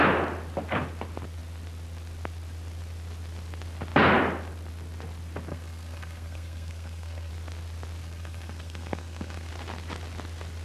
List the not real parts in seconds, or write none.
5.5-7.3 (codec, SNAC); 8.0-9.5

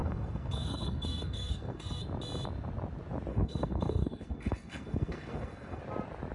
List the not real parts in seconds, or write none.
0.0-2.0 (codec, SNAC); 3.3-5.8

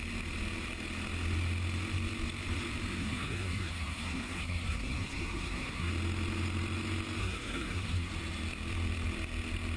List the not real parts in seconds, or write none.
3.0-5.9 (codec, SNAC); 7.2-8.1

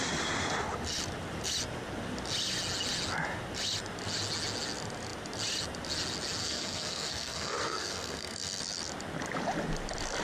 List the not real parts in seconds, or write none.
6.4-8.6 (codec, SNAC)